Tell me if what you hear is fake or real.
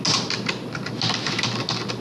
real